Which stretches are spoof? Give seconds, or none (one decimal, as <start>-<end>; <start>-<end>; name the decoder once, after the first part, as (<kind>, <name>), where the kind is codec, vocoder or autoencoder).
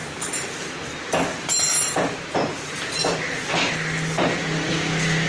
none